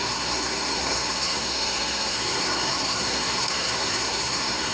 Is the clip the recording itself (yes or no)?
no